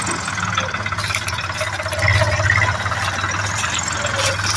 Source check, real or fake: real